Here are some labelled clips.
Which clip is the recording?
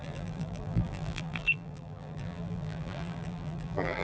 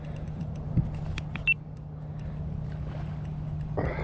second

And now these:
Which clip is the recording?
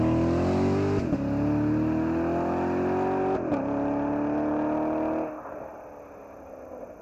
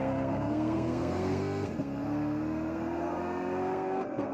first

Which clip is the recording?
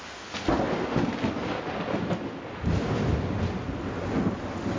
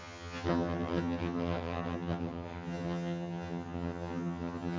first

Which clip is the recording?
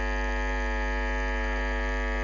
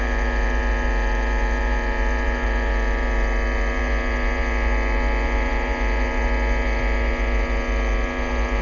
first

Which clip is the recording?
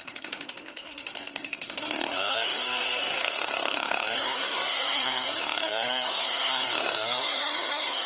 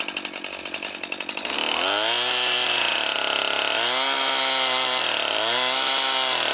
second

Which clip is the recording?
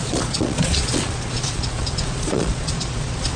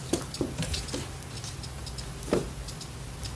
second